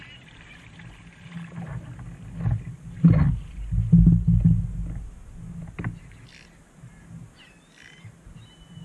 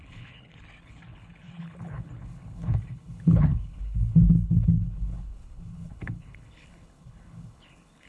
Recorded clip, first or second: first